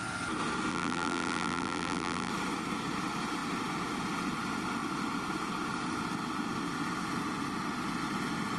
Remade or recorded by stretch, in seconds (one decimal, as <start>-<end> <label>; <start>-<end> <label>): 0.0-0.7 recorded; 0.7-2.3 remade; 2.3-8.6 recorded